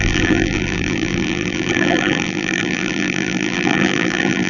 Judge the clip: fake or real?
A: fake